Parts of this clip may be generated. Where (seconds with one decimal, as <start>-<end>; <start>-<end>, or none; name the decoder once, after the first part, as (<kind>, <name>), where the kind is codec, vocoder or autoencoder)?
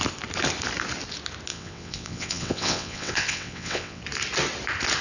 1.5-4.0 (vocoder, WaveNeXt)